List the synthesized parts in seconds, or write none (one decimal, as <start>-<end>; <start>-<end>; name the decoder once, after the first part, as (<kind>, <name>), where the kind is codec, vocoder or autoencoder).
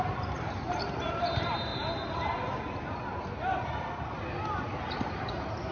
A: 0.0-1.7 (vocoder, BigVGAN v2); 5.1-5.7